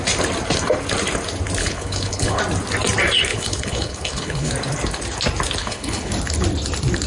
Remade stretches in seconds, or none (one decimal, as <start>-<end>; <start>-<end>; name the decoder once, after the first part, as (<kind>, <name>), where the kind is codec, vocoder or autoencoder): 1.6-2.4 (codec, HILCodec); 3.3-4.5; 5.6-6.1